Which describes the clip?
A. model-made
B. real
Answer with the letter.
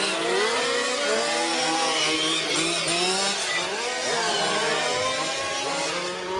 B